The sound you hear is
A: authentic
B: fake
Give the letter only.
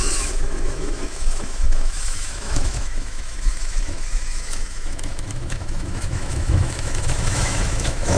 B